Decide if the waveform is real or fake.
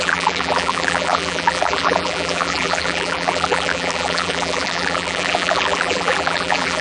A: fake